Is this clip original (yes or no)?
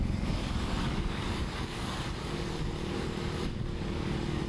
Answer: no